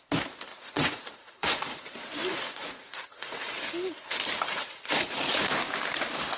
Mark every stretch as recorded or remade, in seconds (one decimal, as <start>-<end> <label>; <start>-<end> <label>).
0.0-0.5 recorded; 0.5-1.8 remade; 1.8-2.3 recorded; 2.3-3.5 remade; 3.5-4.5 recorded; 4.5-5.5 remade; 5.5-6.4 recorded